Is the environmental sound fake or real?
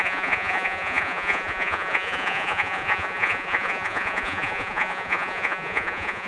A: fake